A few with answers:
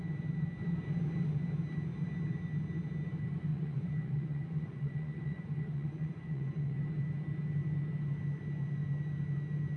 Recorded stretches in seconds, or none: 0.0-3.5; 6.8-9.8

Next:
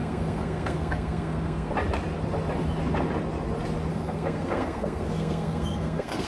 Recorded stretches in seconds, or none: 1.7-3.9